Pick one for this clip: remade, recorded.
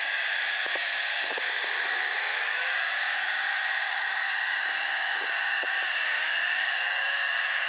remade